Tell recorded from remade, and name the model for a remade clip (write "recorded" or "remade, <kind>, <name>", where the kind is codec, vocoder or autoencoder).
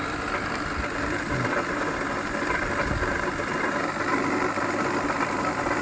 recorded